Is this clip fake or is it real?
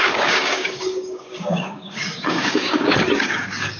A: fake